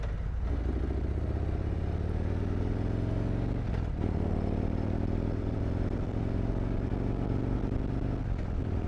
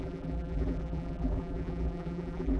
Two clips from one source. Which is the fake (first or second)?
second